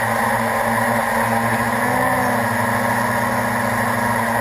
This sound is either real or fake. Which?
real